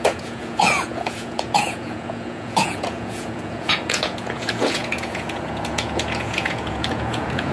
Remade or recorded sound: remade